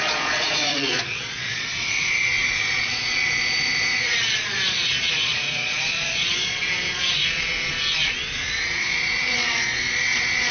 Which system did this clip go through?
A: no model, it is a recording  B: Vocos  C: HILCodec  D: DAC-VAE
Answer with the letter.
B